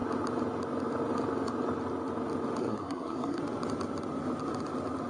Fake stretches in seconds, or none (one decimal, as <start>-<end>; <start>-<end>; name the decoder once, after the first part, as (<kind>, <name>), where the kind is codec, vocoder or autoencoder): 2.6-3.4 (codec, SNAC)